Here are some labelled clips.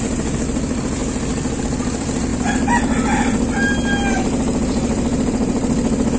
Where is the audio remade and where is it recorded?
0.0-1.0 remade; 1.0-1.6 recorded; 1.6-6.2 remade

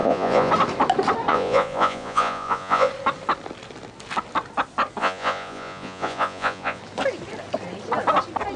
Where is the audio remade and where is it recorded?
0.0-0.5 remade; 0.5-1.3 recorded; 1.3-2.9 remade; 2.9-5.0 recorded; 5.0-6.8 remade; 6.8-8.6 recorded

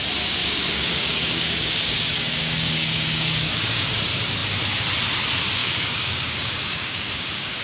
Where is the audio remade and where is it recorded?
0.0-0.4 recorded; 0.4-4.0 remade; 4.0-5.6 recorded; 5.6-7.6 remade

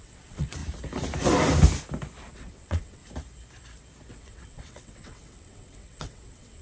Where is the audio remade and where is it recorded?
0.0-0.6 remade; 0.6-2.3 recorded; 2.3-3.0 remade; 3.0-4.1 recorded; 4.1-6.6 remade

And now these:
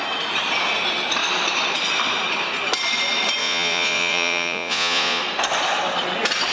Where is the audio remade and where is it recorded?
0.0-3.4 recorded; 3.4-5.2 remade; 5.2-6.5 recorded

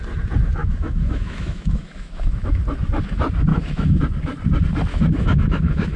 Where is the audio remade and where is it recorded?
0.0-0.6 recorded; 0.6-2.6 remade; 2.6-3.5 recorded; 3.5-4.0 remade; 4.0-4.9 recorded; 4.9-6.0 remade

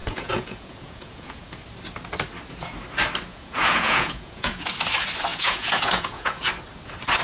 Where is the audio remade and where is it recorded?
0.0-1.5 remade; 1.5-3.3 recorded; 3.3-4.7 remade; 4.7-5.3 recorded; 5.3-6.5 remade; 6.5-7.2 recorded

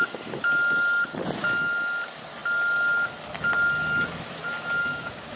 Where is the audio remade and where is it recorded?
0.0-4.8 recorded; 4.8-5.4 remade